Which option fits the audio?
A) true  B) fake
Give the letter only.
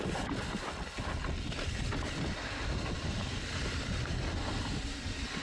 A